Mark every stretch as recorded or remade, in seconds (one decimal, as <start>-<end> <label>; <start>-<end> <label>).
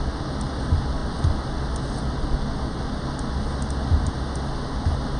0.0-5.2 recorded